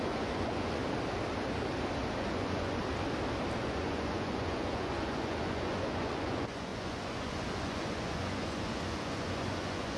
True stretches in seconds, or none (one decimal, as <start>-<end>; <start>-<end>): 0.8-2.2; 2.8-3.6